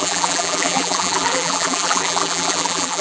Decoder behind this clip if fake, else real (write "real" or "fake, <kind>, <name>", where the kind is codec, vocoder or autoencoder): fake, vocoder, BigVGAN v2